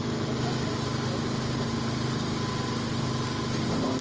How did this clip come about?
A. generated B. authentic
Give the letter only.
B